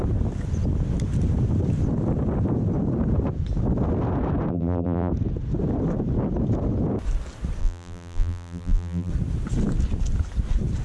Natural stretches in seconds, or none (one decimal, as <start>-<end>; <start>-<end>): 0.0-4.5; 5.1-7.6; 9.1-10.8